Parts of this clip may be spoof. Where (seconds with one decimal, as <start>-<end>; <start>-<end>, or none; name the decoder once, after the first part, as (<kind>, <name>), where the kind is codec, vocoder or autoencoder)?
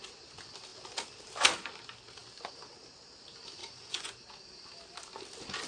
3.6-4.1 (vocoder, Vocos)